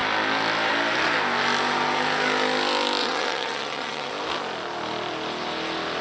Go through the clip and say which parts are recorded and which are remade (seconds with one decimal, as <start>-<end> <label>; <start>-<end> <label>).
0.0-3.0 recorded; 3.0-4.1 remade; 4.1-6.0 recorded